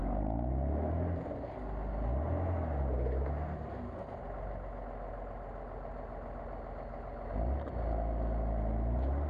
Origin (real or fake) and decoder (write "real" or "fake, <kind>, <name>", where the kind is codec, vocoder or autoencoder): real